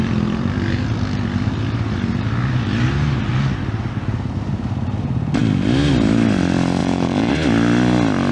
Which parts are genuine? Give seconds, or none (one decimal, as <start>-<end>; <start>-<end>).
0.0-6.8; 7.3-8.3

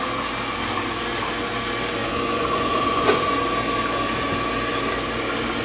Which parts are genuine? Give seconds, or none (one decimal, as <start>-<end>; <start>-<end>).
0.0-2.0; 3.3-5.6

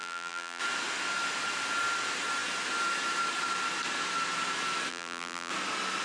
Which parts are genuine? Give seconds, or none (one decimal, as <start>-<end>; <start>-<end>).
0.6-4.9; 5.5-6.0